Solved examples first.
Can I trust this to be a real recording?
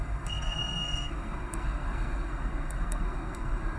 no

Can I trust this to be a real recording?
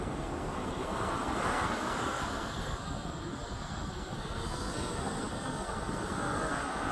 no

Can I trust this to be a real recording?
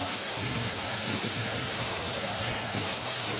no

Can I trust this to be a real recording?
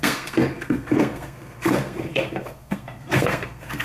no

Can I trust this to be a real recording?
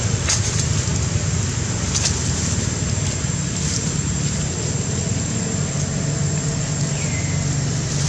yes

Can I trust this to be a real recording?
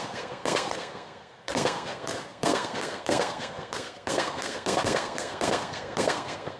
no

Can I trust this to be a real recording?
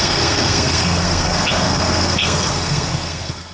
no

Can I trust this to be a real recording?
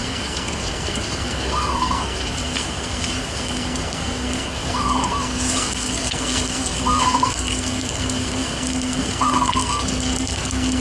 no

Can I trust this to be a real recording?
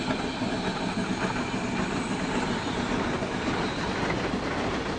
yes